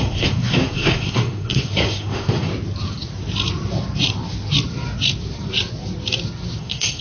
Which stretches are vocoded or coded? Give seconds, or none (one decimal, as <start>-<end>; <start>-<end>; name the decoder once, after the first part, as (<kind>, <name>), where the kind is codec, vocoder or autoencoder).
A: 0.0-2.5 (codec, SNAC); 6.6-7.0